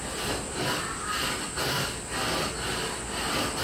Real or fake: real